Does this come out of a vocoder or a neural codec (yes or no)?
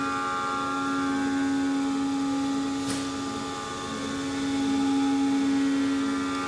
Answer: no